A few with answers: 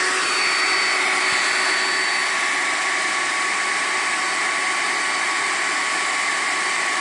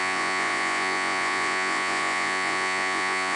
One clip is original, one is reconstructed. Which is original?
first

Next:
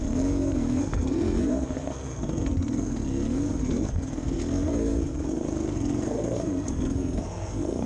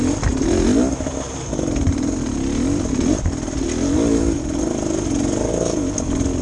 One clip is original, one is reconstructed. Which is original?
second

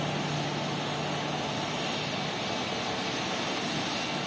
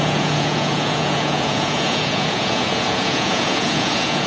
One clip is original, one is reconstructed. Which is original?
first